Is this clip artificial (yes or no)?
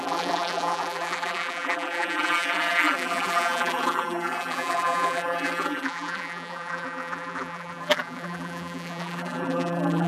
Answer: yes